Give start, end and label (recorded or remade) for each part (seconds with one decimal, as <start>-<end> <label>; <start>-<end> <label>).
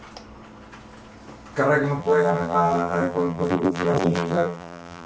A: 0.0-2.0 recorded; 2.0-5.1 remade